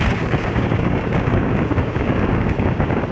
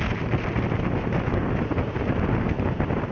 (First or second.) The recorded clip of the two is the second